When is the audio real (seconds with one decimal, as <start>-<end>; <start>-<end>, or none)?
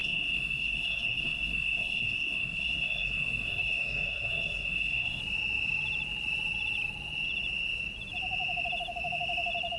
5.2-9.8